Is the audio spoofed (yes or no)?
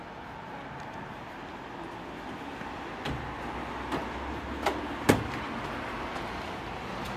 no